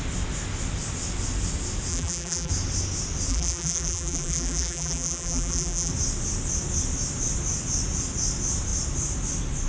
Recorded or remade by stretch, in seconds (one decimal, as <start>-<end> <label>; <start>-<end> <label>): 0.0-1.9 recorded; 1.9-2.5 remade; 2.5-3.3 recorded; 3.3-5.9 remade; 5.9-9.7 recorded